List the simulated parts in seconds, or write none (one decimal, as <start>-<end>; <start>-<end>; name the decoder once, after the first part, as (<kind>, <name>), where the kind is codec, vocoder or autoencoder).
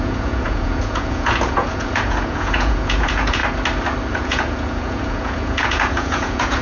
0.0-3.4 (vocoder, Vocos); 4.1-6.6